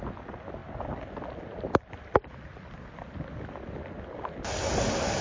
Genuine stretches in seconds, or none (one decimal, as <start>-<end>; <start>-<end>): 0.0-5.2